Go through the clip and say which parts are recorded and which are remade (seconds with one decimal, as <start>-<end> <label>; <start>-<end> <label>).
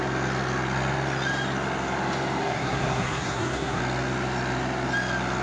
0.0-2.4 recorded; 2.4-3.8 remade; 3.8-5.4 recorded